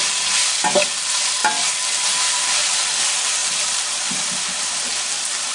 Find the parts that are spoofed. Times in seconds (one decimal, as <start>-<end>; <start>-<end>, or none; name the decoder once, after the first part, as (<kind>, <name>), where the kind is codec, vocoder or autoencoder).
none